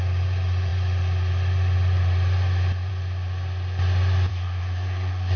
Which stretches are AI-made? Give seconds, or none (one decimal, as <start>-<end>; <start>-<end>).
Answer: 4.3-5.4